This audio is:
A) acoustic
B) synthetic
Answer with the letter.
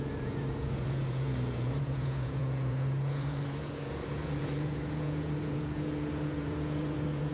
B